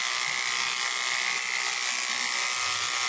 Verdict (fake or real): real